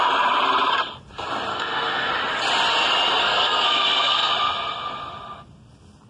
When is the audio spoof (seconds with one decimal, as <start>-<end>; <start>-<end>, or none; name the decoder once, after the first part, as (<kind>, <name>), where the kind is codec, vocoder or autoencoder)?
1.5-2.1 (codec, SNAC); 3.2-4.3

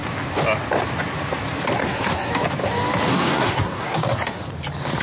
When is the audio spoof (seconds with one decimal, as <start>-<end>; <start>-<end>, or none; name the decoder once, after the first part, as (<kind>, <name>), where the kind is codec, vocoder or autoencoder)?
1.8-2.3 (codec, SNAC); 3.1-4.4

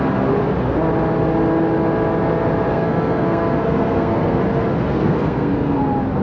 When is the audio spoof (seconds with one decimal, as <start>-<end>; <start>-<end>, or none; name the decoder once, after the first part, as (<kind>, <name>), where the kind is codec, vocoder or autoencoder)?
2.7-4.4 (codec, SNAC); 4.9-5.8

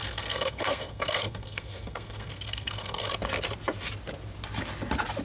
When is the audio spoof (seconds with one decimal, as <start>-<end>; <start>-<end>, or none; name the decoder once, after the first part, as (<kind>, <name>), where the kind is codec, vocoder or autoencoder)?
0.0-3.1 (codec, SNAC)